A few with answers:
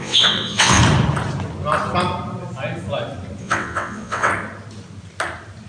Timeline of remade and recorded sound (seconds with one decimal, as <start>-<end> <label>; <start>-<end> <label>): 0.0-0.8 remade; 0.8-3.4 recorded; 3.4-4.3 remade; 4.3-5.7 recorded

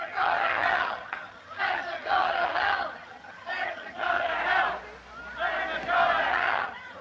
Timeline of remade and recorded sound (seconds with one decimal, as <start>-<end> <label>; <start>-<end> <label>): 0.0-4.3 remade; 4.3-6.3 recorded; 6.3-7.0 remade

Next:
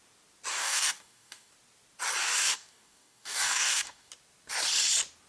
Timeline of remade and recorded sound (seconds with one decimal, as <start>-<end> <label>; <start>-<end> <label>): 0.0-0.5 recorded; 0.5-1.5 remade; 1.5-2.2 recorded; 2.2-4.1 remade; 4.1-5.3 recorded

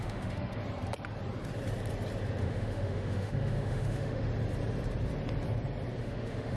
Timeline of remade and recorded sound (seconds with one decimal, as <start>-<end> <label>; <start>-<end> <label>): 0.0-0.6 remade; 0.6-2.4 recorded; 2.4-4.3 remade; 4.3-6.0 recorded; 6.0-6.6 remade

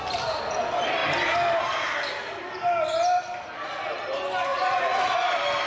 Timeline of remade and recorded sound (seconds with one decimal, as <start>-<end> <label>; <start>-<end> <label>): 0.0-4.5 recorded; 4.5-5.3 remade; 5.3-5.7 recorded